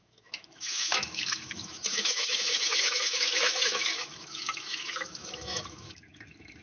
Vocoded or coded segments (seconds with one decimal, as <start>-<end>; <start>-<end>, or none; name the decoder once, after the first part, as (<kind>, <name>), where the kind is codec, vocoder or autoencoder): 0.0-6.6 (autoencoder, DAC-VAE)